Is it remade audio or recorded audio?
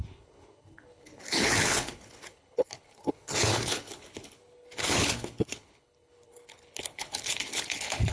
remade